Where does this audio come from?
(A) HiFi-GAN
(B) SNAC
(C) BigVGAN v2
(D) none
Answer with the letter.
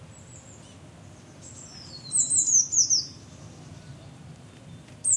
D